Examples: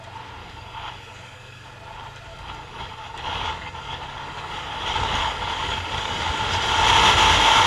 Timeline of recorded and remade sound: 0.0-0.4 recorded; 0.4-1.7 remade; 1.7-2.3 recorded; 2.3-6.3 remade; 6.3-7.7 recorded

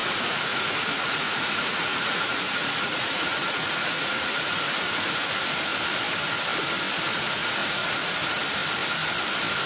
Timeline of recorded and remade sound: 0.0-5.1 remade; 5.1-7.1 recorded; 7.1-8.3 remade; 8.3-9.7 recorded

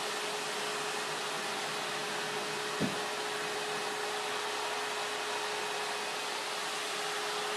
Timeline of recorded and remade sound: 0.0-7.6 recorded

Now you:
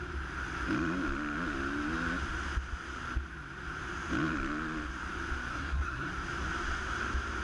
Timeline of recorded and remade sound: 0.0-5.5 recorded; 5.5-6.1 remade; 6.1-7.4 recorded

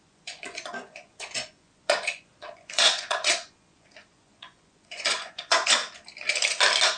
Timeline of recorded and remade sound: 0.0-5.8 remade; 5.8-7.0 recorded

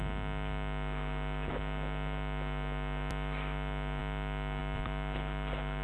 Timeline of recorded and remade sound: 0.0-5.8 recorded